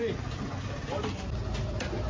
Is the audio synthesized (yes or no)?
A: no